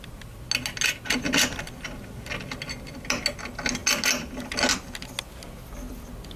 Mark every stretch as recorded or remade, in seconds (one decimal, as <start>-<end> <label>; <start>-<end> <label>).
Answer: 0.0-6.4 recorded